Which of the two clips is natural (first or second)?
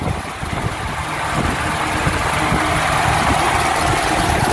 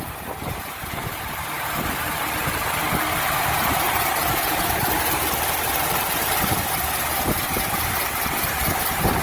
first